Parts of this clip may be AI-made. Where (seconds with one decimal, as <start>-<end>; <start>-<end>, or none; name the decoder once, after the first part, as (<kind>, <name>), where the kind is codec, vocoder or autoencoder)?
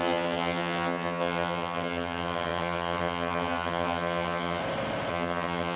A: 0.0-4.6 (vocoder, HiFi-GAN); 5.1-5.8